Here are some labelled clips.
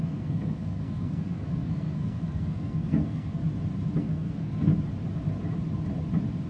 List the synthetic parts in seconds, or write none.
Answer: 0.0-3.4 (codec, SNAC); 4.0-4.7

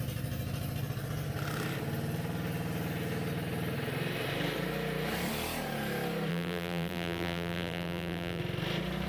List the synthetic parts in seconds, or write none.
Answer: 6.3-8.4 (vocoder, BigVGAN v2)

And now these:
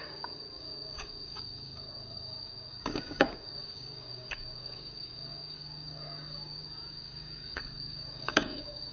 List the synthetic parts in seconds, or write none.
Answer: 0.0-8.9 (codec, DAC)